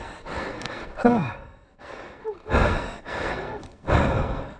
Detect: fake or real fake